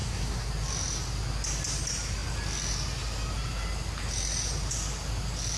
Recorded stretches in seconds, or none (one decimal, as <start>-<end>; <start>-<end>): 0.5-5.6